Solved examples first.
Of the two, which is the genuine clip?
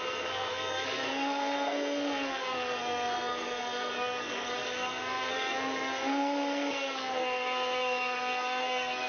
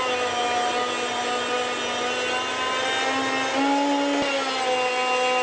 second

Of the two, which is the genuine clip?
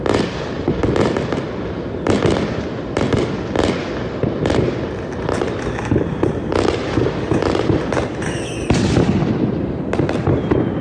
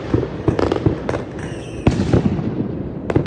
first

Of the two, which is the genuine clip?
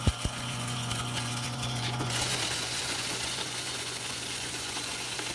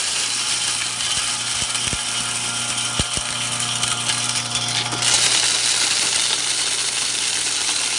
second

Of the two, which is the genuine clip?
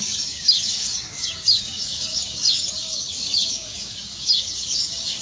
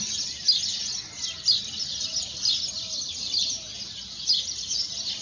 second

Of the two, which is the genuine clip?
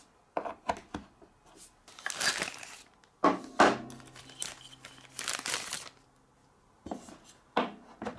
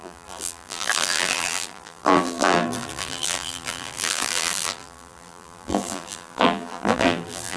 first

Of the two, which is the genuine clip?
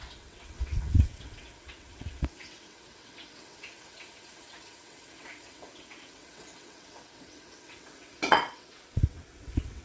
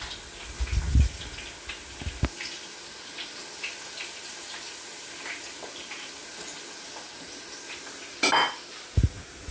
second